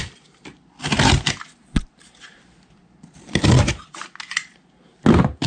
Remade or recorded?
recorded